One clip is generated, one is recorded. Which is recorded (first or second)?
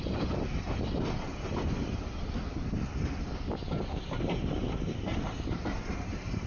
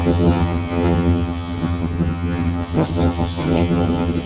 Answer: first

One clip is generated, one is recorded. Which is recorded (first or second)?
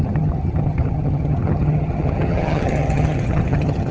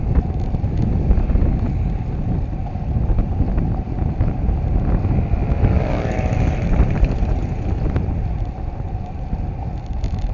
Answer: second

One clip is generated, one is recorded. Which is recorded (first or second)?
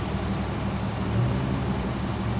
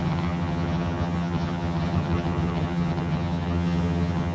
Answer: first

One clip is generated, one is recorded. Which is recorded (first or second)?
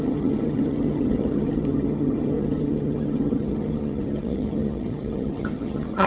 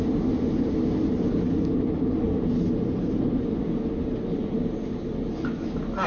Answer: second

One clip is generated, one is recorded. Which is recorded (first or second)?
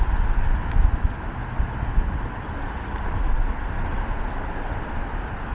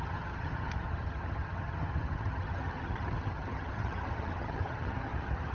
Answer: first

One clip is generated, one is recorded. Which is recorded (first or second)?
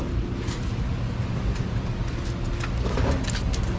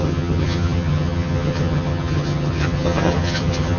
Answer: first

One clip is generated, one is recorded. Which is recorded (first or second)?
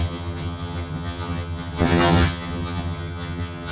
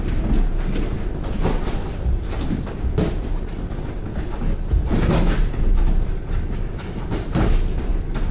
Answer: second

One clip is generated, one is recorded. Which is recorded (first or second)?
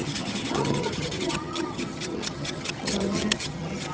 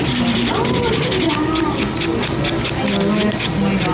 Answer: second